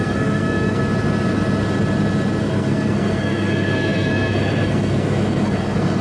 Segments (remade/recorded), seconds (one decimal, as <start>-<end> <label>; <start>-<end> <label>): 0.0-0.8 remade; 0.8-2.4 recorded; 2.4-6.0 remade